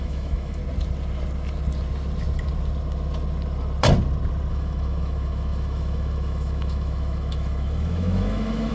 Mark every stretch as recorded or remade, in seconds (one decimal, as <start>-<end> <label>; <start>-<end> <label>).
0.0-0.6 remade; 0.6-4.5 recorded; 4.5-8.7 remade